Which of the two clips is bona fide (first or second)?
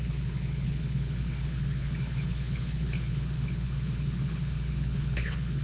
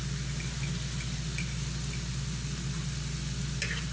second